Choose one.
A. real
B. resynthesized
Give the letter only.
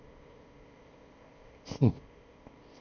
B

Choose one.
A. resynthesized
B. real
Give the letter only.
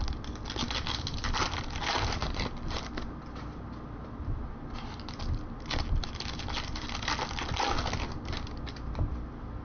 B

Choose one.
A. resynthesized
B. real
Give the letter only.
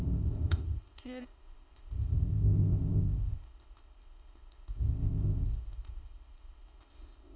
A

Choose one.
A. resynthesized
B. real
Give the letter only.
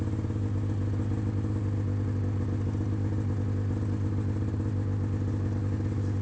B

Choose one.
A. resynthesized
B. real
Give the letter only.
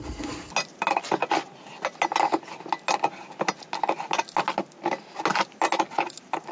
B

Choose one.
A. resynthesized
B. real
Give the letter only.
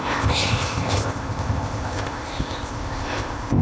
A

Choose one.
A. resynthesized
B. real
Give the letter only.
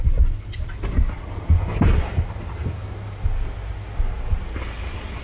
B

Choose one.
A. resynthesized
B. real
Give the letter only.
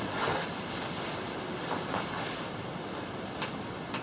B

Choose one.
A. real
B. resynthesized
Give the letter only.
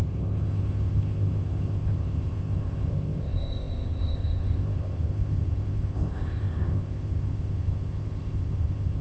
B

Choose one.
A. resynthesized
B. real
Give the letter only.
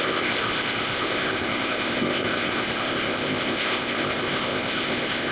A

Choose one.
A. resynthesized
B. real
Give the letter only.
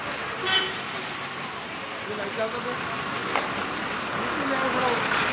B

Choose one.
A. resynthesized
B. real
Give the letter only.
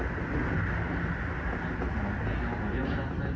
B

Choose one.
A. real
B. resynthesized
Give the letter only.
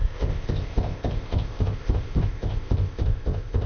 B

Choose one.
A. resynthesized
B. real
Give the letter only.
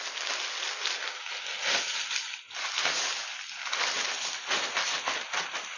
B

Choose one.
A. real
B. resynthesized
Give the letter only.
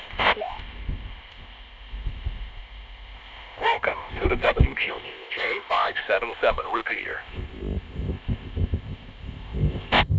B